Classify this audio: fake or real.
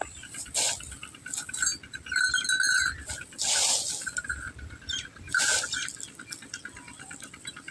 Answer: real